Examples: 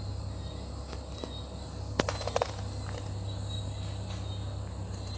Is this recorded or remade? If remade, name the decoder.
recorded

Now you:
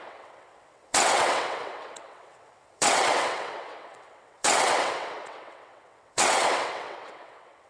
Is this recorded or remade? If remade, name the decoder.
remade, vocoder, WaveNeXt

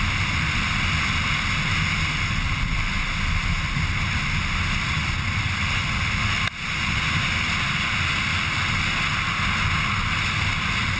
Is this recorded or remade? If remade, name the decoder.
recorded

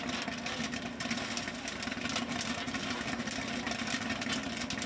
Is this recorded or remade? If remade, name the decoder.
recorded